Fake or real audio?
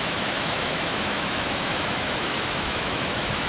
fake